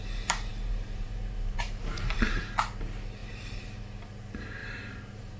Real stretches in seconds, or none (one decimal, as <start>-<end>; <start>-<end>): 0.0-0.5; 2.4-3.2; 3.8-4.6